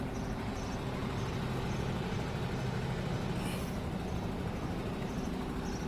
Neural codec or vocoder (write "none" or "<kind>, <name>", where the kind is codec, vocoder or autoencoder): none